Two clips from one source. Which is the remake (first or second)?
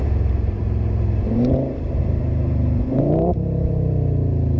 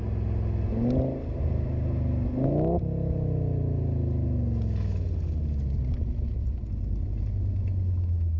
first